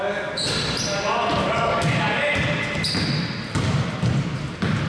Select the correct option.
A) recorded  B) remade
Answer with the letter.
A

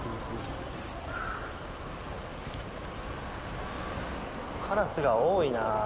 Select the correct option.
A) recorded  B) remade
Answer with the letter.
A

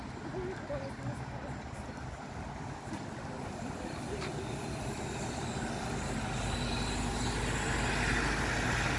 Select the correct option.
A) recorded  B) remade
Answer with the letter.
A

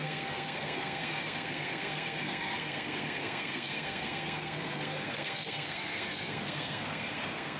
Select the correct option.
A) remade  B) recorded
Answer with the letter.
A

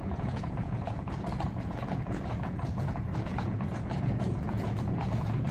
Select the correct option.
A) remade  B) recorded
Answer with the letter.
A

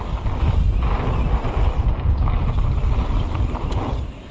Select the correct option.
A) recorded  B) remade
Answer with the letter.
A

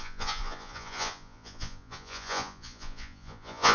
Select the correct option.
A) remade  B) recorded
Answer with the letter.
A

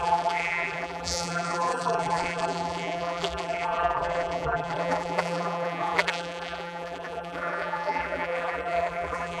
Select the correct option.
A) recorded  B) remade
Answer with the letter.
B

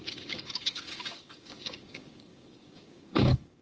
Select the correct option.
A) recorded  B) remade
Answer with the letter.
B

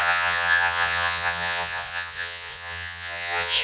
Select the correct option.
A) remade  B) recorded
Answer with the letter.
A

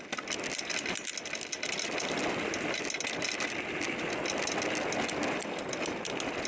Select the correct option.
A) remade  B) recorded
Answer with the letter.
B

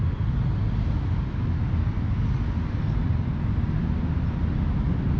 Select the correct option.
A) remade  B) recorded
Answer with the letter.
B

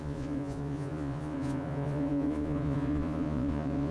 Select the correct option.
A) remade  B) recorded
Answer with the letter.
A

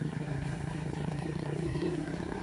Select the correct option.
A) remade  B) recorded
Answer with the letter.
A